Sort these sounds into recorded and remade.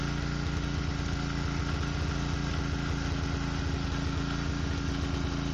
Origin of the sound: recorded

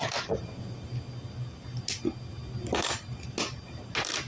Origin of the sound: recorded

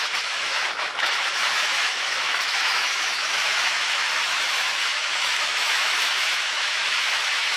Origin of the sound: remade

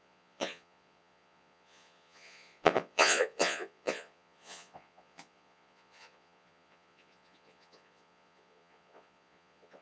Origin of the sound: remade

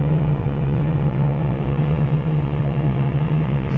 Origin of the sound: remade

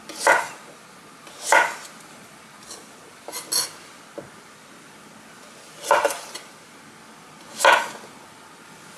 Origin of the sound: recorded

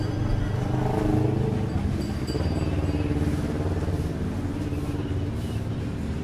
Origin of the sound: recorded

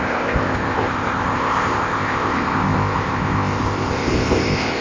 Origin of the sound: remade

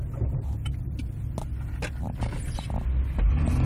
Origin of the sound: recorded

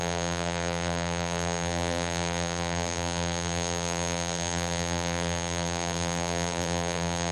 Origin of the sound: remade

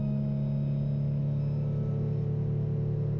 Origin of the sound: recorded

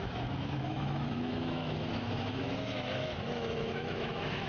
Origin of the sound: remade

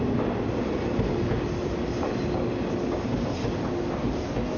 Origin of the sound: recorded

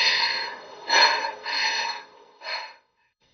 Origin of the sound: remade